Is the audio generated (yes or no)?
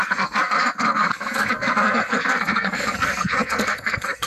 yes